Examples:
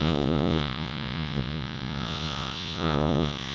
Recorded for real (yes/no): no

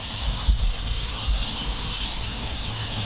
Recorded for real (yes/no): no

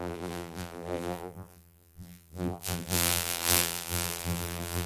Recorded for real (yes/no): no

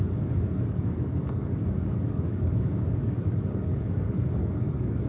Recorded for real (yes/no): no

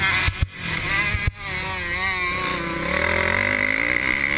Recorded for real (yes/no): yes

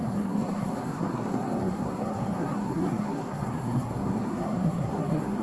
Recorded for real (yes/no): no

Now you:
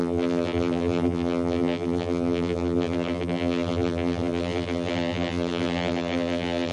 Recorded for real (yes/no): no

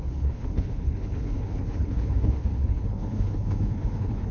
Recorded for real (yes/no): no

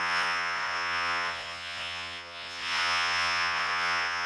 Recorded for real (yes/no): no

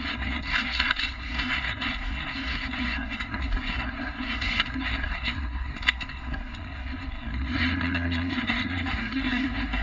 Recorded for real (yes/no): no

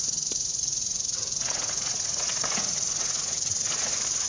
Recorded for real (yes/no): no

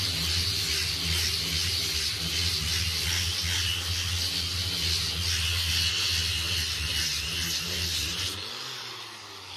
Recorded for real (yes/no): yes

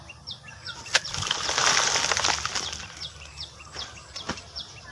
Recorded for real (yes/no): no